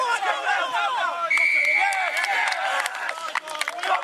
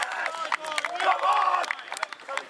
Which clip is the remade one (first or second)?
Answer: first